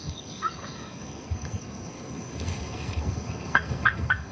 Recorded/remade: remade